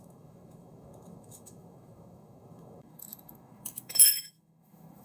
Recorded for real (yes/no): no